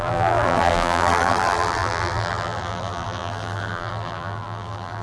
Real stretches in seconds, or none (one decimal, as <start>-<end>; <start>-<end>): none